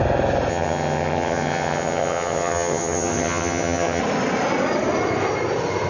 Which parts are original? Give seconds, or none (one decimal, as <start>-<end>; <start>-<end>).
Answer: 0.0-0.5; 4.0-5.9